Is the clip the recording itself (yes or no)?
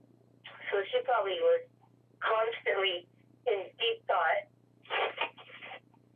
yes